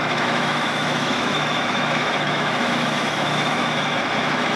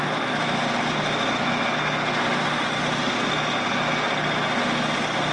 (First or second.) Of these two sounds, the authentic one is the second